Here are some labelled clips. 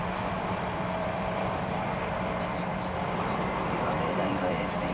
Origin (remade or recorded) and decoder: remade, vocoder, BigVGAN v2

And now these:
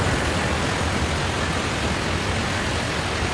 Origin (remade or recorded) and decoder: recorded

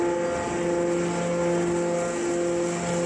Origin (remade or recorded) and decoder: recorded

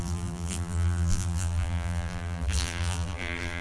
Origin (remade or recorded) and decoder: remade, vocoder, BigVGAN v2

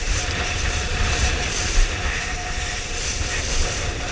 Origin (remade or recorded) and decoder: remade, vocoder, BigVGAN v2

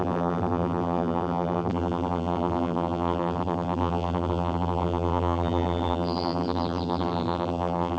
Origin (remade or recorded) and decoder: remade, vocoder, BigVGAN v2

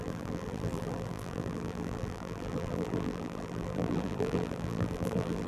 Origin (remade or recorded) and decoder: remade, vocoder, BigVGAN v2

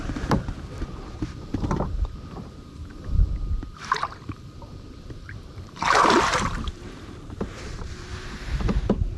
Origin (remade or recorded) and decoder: remade, vocoder, BigVGAN v2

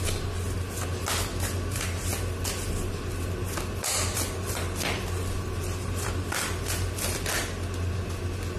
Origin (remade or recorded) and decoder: recorded